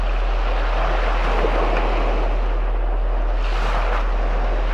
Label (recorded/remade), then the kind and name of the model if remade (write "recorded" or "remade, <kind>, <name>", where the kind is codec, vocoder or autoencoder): recorded